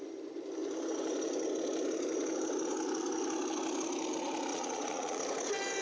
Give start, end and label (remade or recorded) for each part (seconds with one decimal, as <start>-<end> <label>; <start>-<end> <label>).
0.0-4.5 recorded; 4.5-5.2 remade; 5.2-5.8 recorded